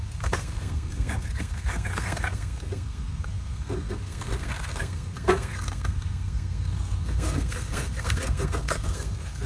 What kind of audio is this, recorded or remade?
remade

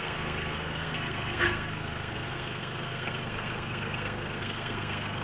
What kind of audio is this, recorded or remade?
remade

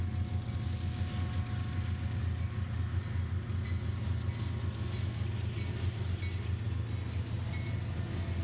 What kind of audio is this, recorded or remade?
recorded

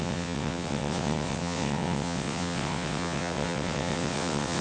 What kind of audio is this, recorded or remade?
remade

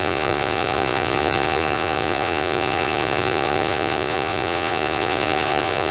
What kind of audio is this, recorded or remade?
remade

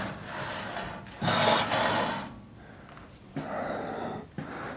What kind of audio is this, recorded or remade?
recorded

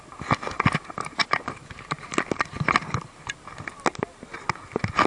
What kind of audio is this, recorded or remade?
recorded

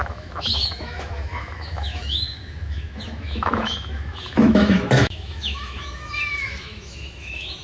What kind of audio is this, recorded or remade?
remade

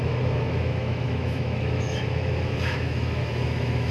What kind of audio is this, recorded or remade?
remade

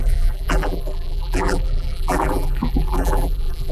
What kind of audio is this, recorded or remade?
remade